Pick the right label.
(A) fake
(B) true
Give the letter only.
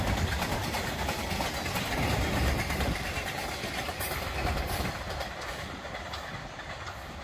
A